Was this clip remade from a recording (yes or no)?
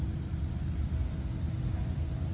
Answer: no